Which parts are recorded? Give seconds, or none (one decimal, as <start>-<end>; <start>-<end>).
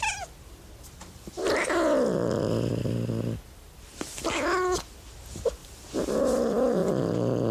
0.0-7.5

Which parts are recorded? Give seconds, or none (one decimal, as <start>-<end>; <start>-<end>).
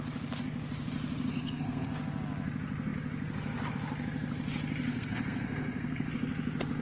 0.0-1.3; 1.9-4.9; 6.1-6.8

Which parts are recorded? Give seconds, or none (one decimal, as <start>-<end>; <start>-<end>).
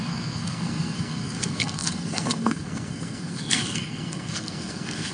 none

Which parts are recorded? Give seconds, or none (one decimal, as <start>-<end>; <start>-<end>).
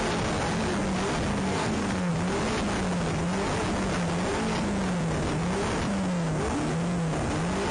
0.0-1.3; 2.1-7.7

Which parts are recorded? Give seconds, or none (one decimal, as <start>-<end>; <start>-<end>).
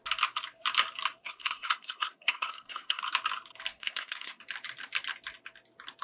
0.0-1.2; 3.0-3.7; 4.4-6.0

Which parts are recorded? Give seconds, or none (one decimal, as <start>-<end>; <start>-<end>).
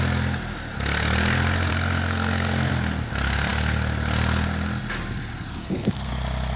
0.0-1.7; 2.7-5.6; 6.1-6.6